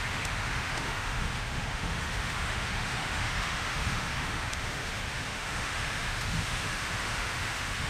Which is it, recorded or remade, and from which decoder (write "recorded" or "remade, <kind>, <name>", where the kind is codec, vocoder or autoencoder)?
remade, autoencoder, DAC-VAE